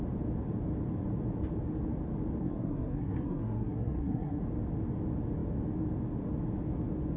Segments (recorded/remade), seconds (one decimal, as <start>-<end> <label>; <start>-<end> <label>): 0.0-2.4 recorded; 2.4-4.4 remade; 4.4-7.2 recorded